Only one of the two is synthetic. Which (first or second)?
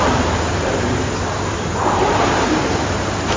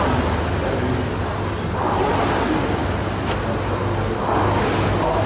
first